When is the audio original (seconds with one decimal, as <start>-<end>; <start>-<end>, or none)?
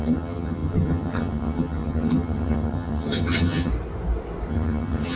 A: 3.7-4.5